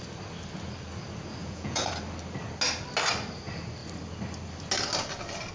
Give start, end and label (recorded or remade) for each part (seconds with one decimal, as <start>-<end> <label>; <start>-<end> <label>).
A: 0.0-1.4 recorded; 1.4-1.9 remade; 1.9-5.5 recorded